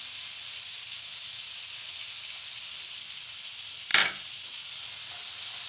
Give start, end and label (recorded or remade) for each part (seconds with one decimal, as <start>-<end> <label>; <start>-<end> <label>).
0.0-3.9 recorded; 3.9-4.4 remade; 4.4-5.7 recorded

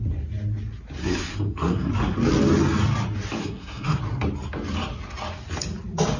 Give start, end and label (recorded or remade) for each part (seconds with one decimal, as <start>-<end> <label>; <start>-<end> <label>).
0.0-1.0 recorded; 1.0-1.9 remade; 1.9-3.4 recorded; 3.4-4.0 remade; 4.0-6.2 recorded

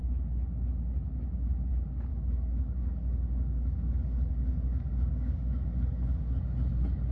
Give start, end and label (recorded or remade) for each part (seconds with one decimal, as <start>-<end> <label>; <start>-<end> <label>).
0.0-2.1 recorded; 2.1-6.4 remade; 6.4-7.1 recorded

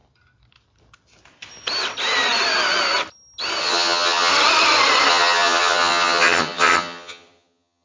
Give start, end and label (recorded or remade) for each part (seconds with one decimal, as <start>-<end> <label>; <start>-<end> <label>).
0.0-3.6 recorded; 3.6-4.3 remade; 4.3-5.1 recorded; 5.1-7.8 remade

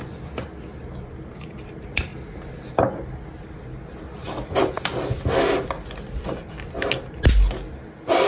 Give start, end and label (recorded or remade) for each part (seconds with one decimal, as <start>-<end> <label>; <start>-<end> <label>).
0.0-8.3 recorded

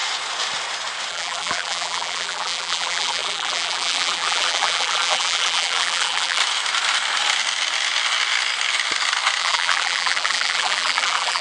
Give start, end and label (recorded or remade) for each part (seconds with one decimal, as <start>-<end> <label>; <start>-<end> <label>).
0.0-1.1 recorded; 1.1-6.4 remade; 6.4-9.4 recorded; 9.4-11.4 remade